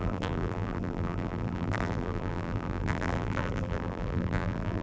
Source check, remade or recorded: remade